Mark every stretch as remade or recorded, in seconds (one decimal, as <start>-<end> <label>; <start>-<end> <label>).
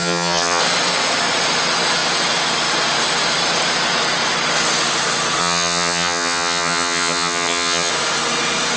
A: 0.0-0.6 remade; 0.6-5.4 recorded; 5.4-7.9 remade; 7.9-8.8 recorded